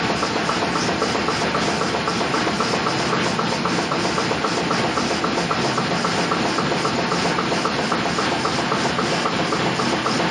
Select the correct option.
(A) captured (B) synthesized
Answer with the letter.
A